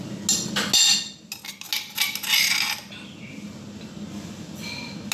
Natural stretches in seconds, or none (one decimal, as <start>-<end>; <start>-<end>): 0.0-5.1